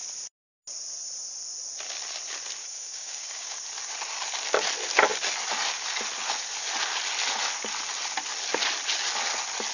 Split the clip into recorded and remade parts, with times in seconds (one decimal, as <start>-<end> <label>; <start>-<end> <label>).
0.0-2.6 recorded; 2.6-3.6 remade; 3.6-9.7 recorded

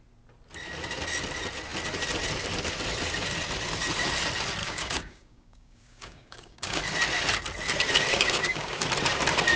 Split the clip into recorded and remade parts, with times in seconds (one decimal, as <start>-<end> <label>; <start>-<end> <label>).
0.0-4.6 recorded; 4.6-6.8 remade; 6.8-8.1 recorded; 8.1-8.8 remade; 8.8-9.6 recorded

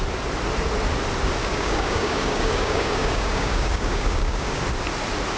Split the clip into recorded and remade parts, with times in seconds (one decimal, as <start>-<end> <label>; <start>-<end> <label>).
0.0-1.4 recorded; 1.4-4.6 remade; 4.6-5.4 recorded

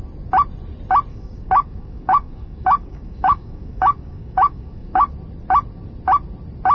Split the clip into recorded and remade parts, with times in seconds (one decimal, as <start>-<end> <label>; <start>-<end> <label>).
0.0-1.1 recorded; 1.1-5.1 remade; 5.1-6.7 recorded

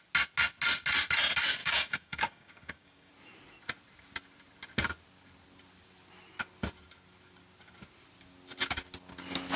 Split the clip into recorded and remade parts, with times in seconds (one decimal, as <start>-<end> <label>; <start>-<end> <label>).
0.0-1.6 recorded; 1.6-3.1 remade; 3.1-9.6 recorded

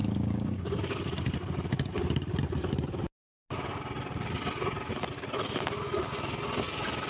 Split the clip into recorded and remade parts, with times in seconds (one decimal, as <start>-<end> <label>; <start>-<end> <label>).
0.0-1.0 remade; 1.0-7.1 recorded

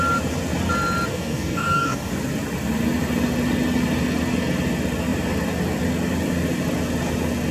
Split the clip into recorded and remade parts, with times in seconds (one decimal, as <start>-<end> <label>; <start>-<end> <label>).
0.0-1.1 recorded; 1.1-2.1 remade; 2.1-7.5 recorded

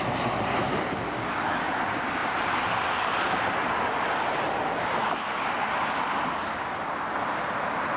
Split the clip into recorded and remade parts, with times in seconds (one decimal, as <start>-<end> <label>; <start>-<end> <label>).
0.0-1.0 recorded; 1.0-1.6 remade; 1.6-8.0 recorded